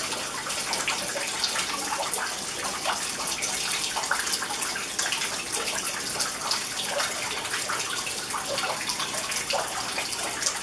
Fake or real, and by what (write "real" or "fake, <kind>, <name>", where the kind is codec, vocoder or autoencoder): real